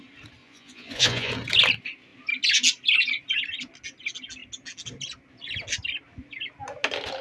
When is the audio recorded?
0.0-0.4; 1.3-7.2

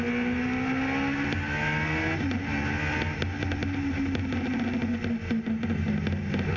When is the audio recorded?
0.0-6.6

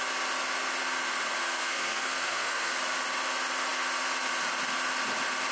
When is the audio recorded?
0.0-1.4; 2.7-5.5

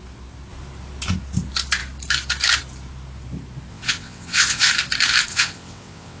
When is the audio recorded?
0.0-3.7; 4.7-5.3

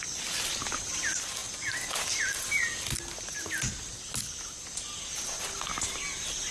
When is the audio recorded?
0.0-6.5

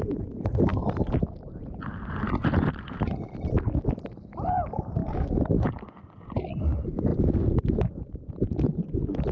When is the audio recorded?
0.0-5.0; 6.0-9.3